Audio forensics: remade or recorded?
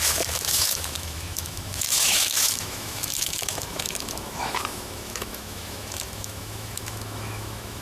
remade